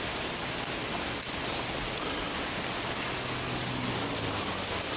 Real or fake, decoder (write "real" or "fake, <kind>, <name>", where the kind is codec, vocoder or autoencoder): real